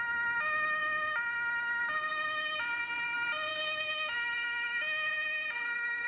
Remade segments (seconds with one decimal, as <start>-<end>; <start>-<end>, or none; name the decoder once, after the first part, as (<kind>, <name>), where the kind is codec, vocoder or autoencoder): 3.5-5.1 (autoencoder, DAC-VAE)